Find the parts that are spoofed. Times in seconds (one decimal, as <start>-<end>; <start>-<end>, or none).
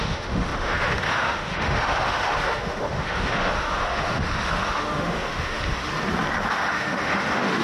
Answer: 0.0-5.9; 6.5-7.6